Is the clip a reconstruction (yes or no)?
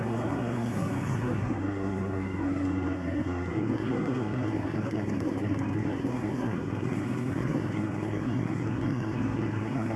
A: yes